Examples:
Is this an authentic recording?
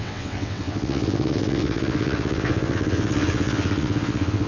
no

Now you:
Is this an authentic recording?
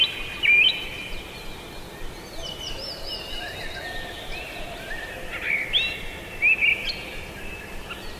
yes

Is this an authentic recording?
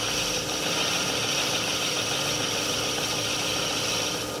yes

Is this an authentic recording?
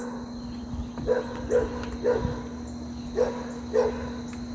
yes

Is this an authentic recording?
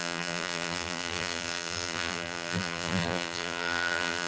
no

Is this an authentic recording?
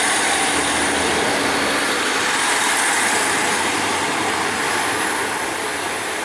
yes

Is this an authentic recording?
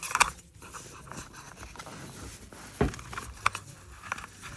yes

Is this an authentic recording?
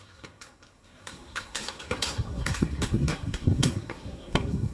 no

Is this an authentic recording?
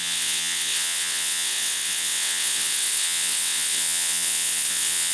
no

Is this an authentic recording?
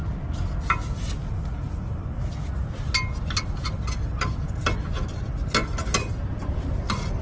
yes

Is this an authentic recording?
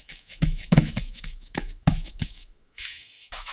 no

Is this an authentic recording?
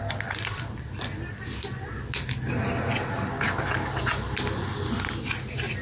yes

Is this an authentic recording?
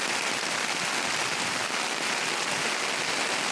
yes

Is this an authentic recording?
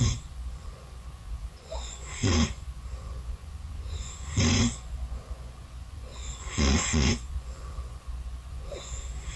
no